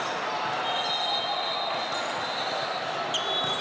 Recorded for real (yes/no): yes